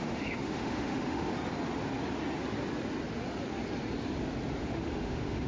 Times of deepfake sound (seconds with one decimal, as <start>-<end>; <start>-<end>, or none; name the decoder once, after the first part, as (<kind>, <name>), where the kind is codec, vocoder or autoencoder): 0.0-1.3 (autoencoder, DAC-VAE); 4.6-5.5